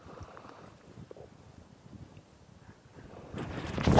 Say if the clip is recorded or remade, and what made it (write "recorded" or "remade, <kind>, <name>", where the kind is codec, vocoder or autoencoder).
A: recorded